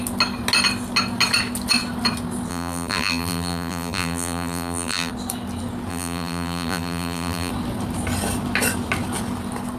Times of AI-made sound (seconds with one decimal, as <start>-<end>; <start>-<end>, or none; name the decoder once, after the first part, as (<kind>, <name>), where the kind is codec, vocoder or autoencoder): 2.5-5.1 (vocoder, BigVGAN v2); 5.9-7.5